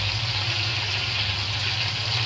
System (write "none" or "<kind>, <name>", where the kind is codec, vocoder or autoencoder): none